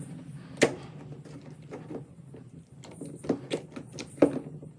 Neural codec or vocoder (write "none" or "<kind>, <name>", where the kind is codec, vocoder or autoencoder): none